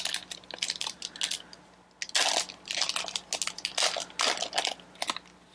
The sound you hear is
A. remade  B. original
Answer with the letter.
B